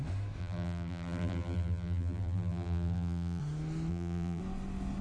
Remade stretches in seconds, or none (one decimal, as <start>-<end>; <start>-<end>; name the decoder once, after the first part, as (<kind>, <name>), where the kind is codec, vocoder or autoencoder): 0.4-3.4 (vocoder, BigVGAN v2); 3.9-4.4